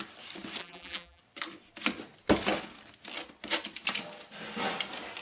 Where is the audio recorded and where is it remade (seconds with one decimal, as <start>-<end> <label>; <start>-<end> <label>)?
0.0-0.6 recorded; 0.6-1.2 remade; 1.2-5.2 recorded